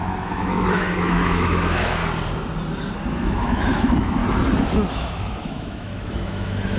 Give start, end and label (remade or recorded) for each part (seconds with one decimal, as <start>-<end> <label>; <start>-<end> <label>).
0.0-2.0 remade; 2.0-3.1 recorded; 3.1-4.2 remade; 4.2-4.9 recorded; 4.9-6.8 remade